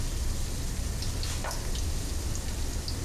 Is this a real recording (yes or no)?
yes